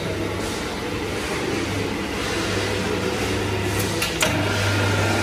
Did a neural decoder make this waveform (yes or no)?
no